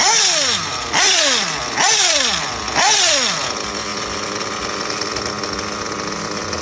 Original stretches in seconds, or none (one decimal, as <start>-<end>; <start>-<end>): 0.0-6.6